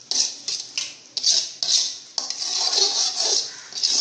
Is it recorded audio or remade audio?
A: recorded